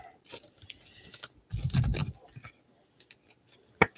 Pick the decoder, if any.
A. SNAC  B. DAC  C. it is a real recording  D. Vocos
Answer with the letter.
C